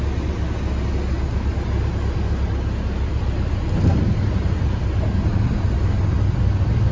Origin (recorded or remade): recorded